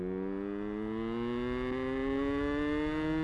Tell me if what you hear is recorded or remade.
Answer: recorded